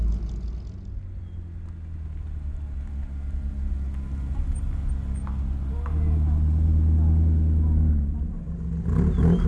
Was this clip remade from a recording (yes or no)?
no